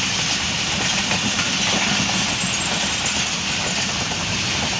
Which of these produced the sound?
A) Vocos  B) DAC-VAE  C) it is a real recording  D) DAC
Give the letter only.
C